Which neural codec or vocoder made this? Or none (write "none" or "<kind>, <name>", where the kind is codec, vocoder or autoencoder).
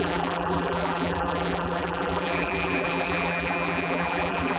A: vocoder, BigVGAN v2